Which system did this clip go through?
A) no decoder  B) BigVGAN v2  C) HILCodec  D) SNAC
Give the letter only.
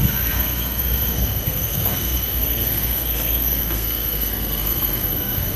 D